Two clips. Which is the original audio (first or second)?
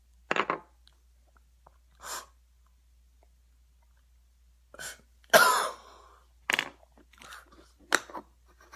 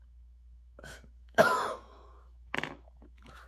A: first